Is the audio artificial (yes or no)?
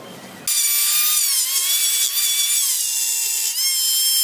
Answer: no